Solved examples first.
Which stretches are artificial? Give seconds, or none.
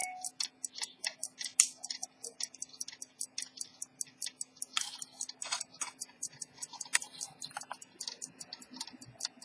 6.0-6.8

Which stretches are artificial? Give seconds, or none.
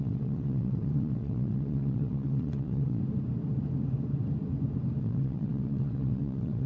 0.0-3.0; 5.0-6.7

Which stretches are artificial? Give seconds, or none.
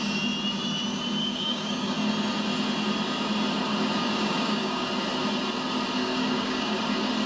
1.2-1.9; 4.0-4.9; 6.0-6.8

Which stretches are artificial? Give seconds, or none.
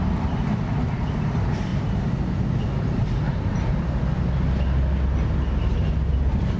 none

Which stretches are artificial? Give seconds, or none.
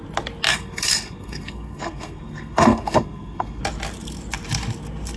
0.5-3.6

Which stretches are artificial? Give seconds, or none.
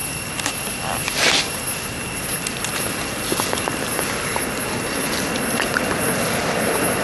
none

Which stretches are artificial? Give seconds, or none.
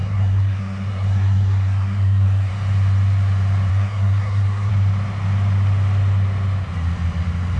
0.0-2.5; 3.7-4.7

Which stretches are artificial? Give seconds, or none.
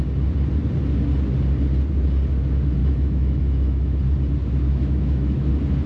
2.8-4.0; 4.7-5.5